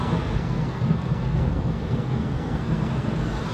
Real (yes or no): no